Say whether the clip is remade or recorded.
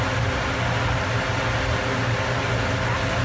recorded